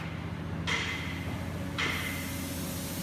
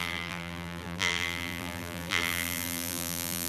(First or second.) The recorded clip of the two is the first